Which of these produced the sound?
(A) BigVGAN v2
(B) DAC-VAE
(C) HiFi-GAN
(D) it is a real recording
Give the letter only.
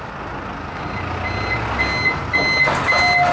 D